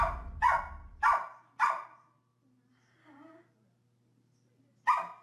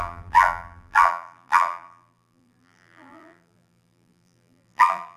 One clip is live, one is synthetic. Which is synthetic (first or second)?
second